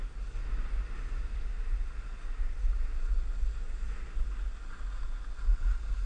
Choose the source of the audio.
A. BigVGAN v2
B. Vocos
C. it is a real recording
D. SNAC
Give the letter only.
C